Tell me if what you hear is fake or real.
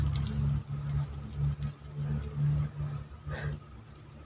real